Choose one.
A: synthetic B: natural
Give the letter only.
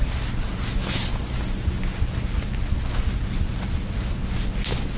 B